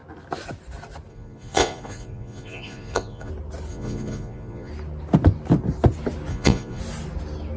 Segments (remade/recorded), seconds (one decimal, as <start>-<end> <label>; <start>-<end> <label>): 0.0-1.1 recorded; 1.1-3.3 remade; 3.3-3.7 recorded; 3.7-4.7 remade; 4.7-6.3 recorded; 6.3-6.8 remade; 6.8-7.6 recorded